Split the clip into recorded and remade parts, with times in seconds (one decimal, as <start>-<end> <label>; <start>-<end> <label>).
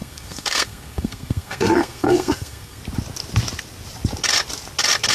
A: 0.0-2.8 remade; 2.8-5.1 recorded